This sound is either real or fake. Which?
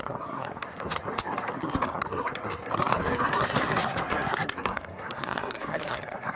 fake